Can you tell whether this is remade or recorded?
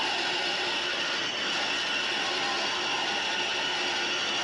recorded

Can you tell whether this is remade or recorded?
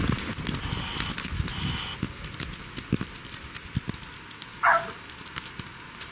recorded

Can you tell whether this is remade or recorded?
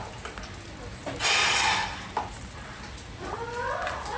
recorded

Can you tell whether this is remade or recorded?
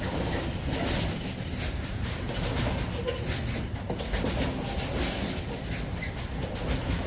recorded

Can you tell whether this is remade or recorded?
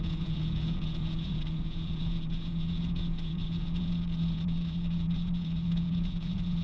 remade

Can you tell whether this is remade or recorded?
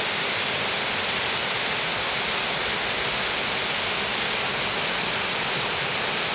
recorded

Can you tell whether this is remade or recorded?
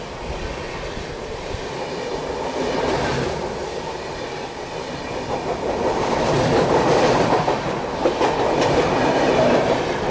recorded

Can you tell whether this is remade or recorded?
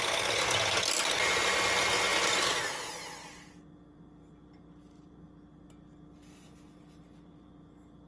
recorded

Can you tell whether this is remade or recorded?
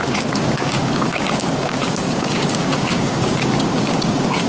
remade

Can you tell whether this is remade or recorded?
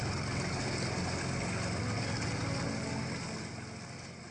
recorded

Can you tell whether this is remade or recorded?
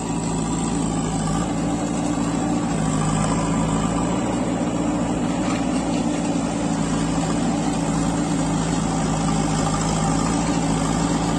recorded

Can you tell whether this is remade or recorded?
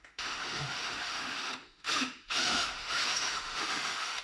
remade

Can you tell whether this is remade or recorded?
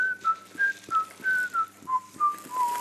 recorded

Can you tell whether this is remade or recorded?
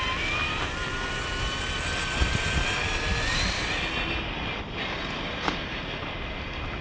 recorded